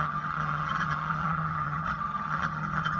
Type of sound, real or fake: fake